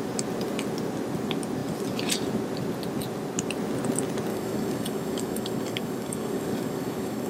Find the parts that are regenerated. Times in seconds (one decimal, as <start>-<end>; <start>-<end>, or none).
4.3-7.3